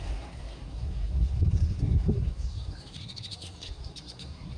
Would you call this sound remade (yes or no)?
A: yes